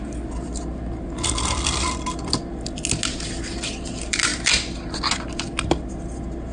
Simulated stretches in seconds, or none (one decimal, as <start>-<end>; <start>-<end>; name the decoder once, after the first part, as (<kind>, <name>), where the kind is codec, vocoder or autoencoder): none